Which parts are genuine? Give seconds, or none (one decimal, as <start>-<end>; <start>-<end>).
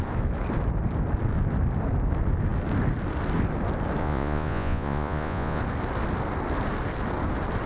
0.0-4.0; 5.6-7.7